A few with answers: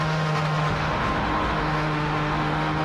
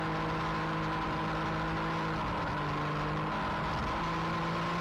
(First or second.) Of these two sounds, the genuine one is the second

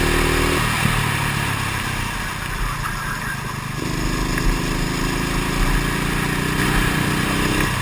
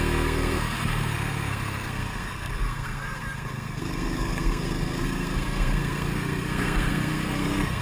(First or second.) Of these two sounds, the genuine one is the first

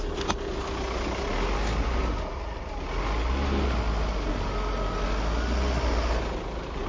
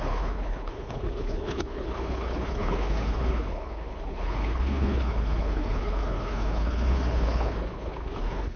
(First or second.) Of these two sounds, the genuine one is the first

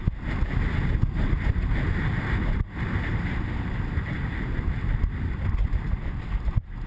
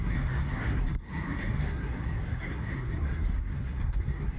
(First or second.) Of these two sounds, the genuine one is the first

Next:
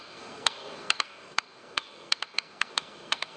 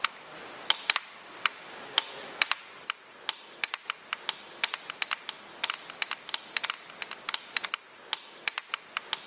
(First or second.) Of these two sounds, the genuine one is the second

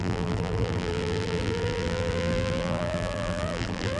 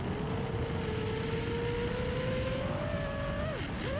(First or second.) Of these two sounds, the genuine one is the second